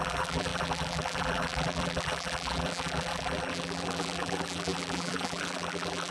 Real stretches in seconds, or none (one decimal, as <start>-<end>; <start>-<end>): none

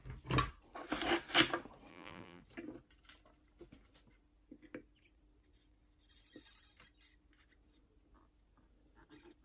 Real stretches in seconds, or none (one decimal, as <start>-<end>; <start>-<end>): 0.0-1.9; 2.4-9.4

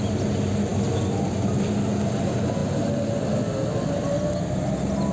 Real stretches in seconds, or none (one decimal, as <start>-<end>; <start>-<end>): 0.0-5.1

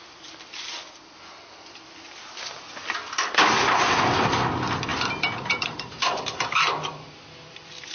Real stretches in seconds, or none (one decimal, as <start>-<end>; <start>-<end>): 0.0-4.9